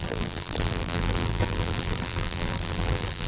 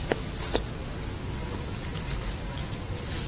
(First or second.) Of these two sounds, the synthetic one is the first